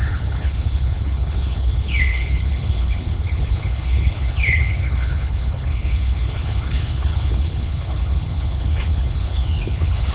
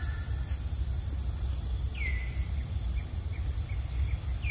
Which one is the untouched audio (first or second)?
second